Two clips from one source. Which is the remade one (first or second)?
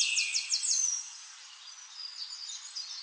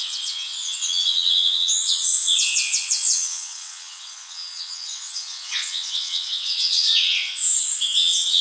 second